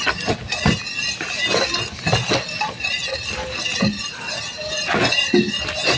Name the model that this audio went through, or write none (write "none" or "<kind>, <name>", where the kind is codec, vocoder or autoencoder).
none